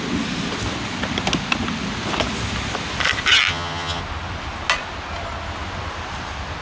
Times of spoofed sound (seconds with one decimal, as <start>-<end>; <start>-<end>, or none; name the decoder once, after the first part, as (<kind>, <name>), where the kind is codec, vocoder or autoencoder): 3.5-4.0 (vocoder, HiFi-GAN)